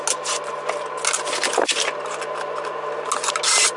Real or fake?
real